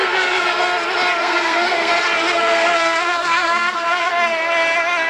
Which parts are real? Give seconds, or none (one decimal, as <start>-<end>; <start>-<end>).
0.6-1.2; 1.9-2.3; 4.1-5.1